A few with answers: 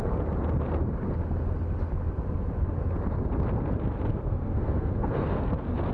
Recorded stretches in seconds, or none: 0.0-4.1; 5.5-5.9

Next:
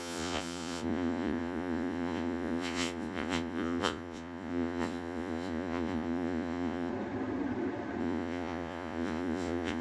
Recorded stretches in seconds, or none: 6.9-8.0

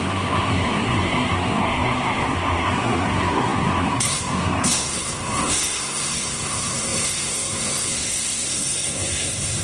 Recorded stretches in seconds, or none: none

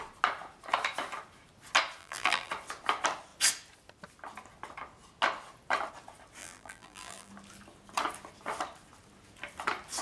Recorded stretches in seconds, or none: 0.0-2.0; 2.5-6.4; 7.3-10.0